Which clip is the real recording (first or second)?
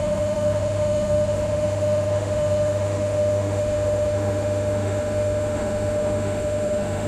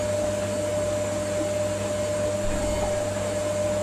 second